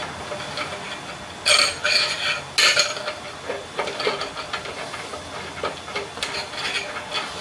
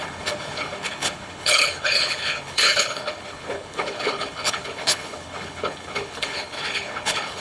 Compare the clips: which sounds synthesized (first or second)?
second